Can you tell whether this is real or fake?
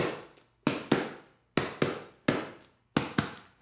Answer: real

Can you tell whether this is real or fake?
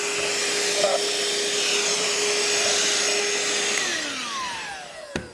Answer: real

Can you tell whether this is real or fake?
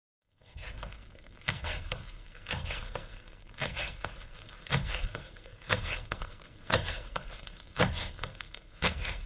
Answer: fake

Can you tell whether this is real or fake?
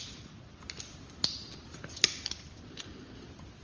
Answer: real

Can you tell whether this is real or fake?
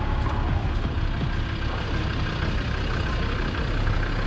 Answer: real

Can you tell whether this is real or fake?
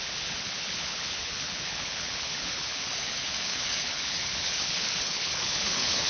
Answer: fake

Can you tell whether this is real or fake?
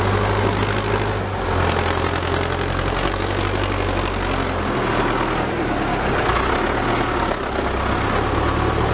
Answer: real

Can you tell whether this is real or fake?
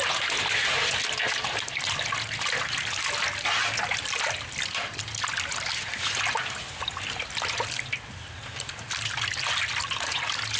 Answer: real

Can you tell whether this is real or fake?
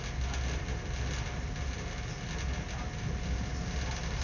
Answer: real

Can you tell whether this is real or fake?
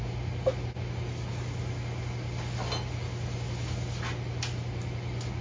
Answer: real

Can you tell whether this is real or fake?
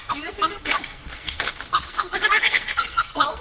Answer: fake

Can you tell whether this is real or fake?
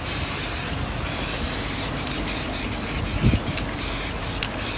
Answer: real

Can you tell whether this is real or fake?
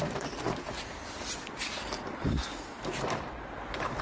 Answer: real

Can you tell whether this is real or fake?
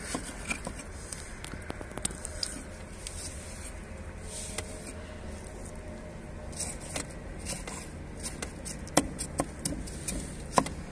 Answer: real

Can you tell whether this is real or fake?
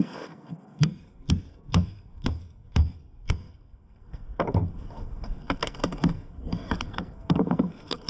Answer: fake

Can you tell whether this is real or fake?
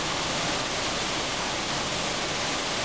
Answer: real